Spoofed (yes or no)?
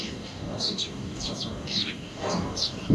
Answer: yes